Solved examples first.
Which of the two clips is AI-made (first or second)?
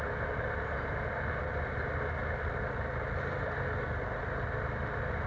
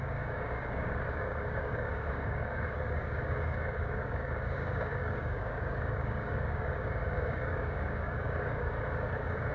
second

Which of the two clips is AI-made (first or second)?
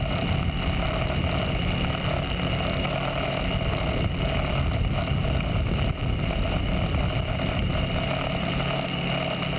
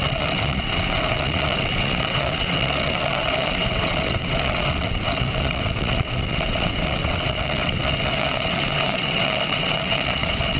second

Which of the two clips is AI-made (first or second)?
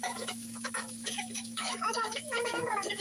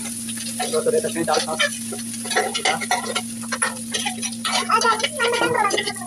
first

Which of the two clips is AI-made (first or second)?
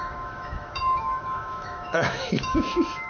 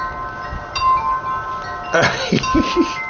first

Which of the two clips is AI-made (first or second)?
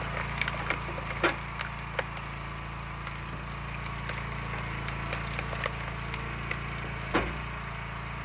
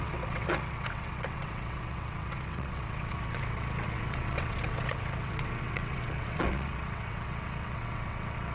second